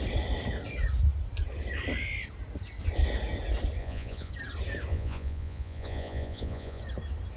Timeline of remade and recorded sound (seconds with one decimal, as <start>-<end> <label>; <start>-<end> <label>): 0.0-3.8 recorded; 3.8-4.3 remade; 4.3-4.9 recorded; 4.9-6.8 remade; 6.8-7.4 recorded